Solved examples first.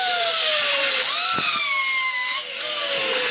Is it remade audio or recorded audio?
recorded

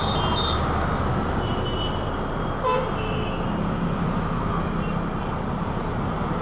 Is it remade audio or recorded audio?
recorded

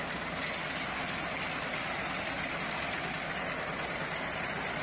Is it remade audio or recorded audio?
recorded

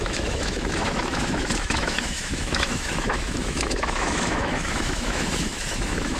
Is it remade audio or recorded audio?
remade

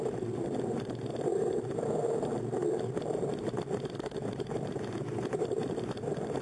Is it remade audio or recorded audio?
recorded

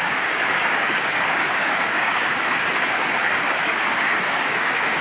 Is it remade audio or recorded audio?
remade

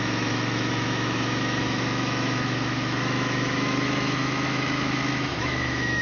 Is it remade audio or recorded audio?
remade